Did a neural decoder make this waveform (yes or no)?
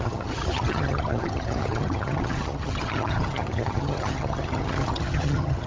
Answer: yes